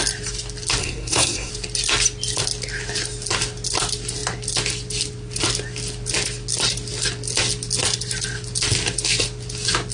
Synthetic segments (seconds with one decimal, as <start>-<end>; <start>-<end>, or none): 0.8-1.5